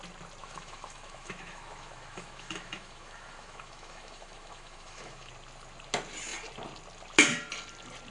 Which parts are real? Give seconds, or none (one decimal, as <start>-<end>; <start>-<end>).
0.0-0.4; 5.3-8.1